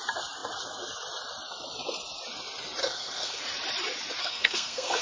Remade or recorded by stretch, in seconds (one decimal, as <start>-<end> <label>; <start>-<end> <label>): 0.0-2.8 recorded; 2.8-3.4 remade; 3.4-4.2 recorded; 4.2-5.0 remade